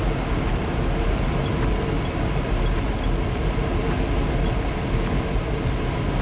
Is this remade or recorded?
recorded